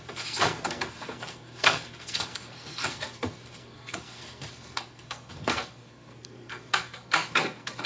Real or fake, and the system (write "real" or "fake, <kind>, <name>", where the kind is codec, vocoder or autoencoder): fake, codec, SNAC